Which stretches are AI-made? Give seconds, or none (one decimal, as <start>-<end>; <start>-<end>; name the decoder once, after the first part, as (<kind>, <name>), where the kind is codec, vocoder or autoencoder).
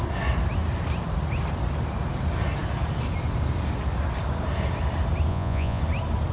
5.3-5.8 (vocoder, Vocos)